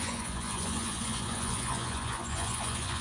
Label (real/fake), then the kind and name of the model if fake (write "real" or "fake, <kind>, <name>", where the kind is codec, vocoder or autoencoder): fake, vocoder, Vocos